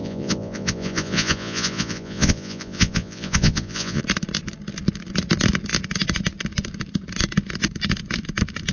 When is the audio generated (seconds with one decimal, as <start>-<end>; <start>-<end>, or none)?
0.0-4.0